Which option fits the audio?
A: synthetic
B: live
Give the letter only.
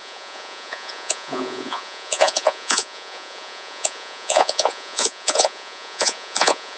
A